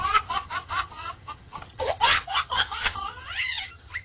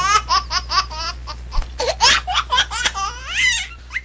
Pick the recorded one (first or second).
second